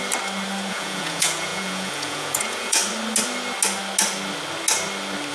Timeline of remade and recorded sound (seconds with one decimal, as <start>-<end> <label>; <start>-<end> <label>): 0.0-0.7 recorded; 0.7-2.8 remade; 2.8-5.3 recorded